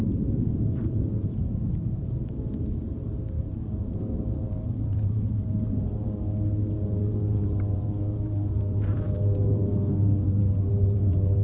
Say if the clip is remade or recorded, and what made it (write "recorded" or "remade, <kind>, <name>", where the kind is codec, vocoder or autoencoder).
remade, vocoder, BigVGAN v2